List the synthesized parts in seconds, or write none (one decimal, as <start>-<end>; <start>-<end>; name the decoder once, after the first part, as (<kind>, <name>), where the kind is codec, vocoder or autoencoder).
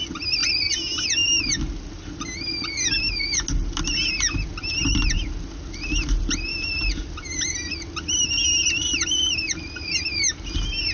none